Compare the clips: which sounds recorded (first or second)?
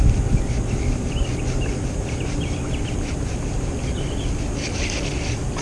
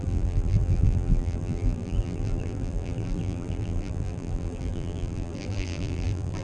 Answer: first